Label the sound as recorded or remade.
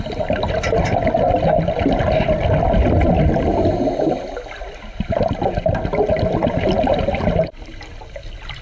recorded